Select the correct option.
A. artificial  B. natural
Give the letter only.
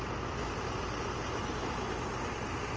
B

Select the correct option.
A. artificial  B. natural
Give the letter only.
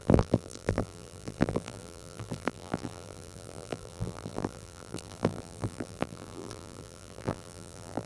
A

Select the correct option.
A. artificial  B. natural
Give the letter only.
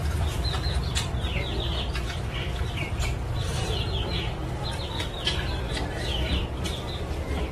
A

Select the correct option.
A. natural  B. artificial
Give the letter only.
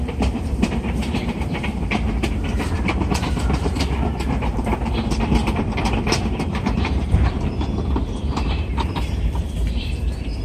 B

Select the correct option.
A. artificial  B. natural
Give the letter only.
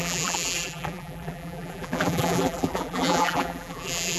A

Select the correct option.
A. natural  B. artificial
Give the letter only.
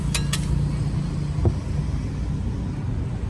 A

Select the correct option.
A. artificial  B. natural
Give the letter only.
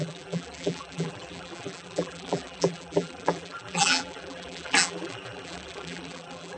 A